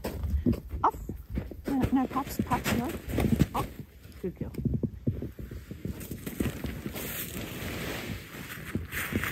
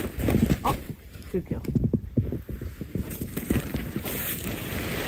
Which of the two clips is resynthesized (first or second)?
second